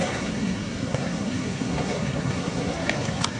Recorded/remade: remade